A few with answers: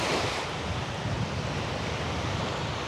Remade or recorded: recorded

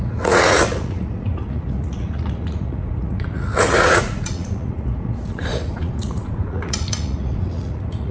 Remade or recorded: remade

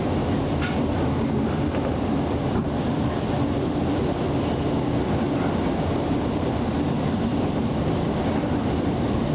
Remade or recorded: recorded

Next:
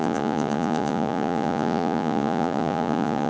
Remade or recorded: remade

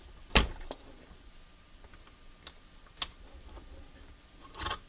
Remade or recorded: recorded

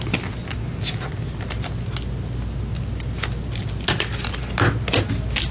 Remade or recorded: recorded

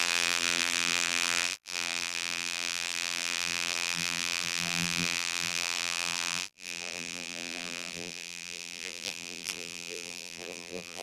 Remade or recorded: remade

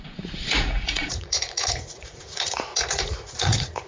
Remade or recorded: remade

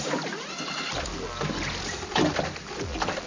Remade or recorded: recorded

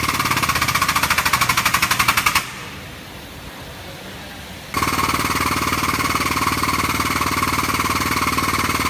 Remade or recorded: recorded